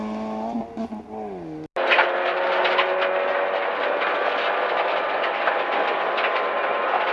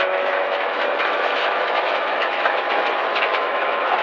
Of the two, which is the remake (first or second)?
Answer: second